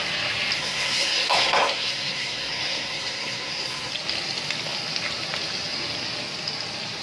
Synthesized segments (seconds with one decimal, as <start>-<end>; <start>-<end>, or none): 0.6-3.9